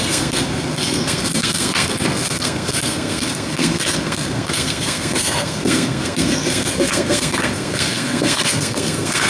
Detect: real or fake fake